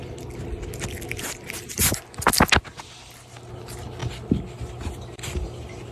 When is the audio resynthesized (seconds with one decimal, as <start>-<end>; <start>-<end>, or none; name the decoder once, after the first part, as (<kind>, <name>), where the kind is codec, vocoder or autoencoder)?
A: none